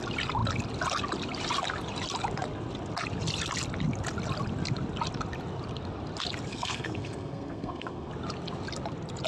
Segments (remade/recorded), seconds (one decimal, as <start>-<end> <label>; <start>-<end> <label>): 0.0-6.5 recorded; 6.5-8.1 remade; 8.1-9.3 recorded